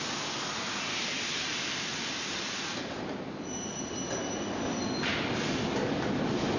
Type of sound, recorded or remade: recorded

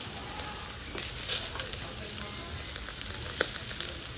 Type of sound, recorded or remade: recorded